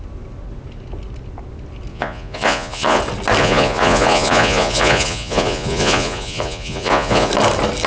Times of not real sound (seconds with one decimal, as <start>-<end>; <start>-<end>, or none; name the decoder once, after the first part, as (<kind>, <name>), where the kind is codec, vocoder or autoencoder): 1.9-3.0 (vocoder, Vocos); 3.4-7.3